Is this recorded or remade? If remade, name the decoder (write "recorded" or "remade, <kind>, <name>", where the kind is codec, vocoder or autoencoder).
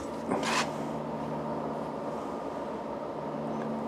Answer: recorded